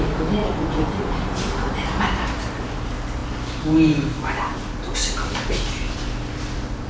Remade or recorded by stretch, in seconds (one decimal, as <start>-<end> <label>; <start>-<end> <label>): 0.0-0.4 recorded; 0.4-1.1 remade; 1.1-6.9 recorded

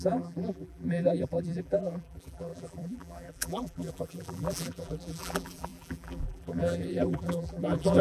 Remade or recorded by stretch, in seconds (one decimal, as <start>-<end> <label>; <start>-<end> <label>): 0.0-8.0 remade

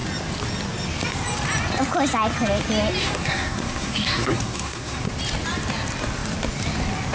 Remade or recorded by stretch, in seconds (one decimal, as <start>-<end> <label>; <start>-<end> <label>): 0.0-3.0 recorded; 3.0-5.1 remade; 5.1-7.1 recorded

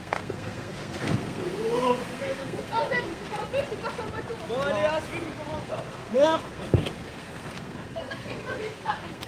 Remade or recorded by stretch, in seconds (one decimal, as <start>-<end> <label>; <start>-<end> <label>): 0.0-3.4 remade; 3.4-5.6 recorded; 5.6-9.3 remade

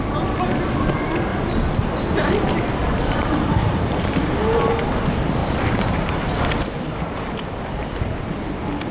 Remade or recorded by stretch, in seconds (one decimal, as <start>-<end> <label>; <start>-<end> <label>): 0.0-3.6 recorded; 3.6-4.2 remade; 4.2-5.4 recorded; 5.4-6.4 remade; 6.4-8.9 recorded

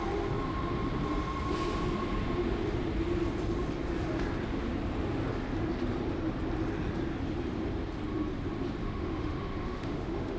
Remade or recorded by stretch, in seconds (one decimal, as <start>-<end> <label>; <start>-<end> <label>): 0.0-8.8 recorded; 8.8-10.4 remade

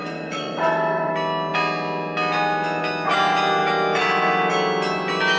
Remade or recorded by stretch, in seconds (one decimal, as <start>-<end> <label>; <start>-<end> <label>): 0.0-1.1 remade; 1.1-5.4 recorded